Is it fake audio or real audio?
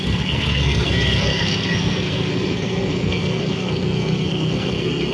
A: fake